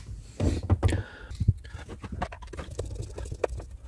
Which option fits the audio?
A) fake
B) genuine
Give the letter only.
B